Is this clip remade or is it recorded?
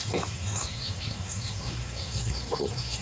remade